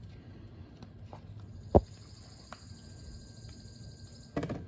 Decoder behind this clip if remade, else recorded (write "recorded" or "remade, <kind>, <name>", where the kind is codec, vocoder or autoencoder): recorded